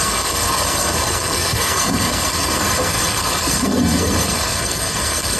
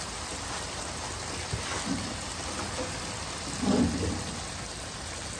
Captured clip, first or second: second